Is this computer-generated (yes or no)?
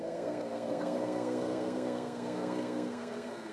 yes